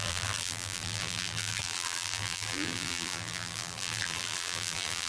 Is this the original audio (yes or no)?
no